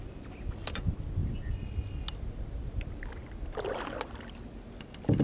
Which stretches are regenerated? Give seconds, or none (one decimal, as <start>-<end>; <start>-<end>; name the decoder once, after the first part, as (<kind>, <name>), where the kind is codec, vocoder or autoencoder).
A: none